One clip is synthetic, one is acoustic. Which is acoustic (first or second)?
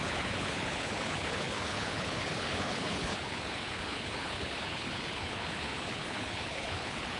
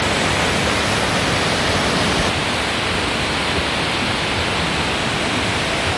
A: second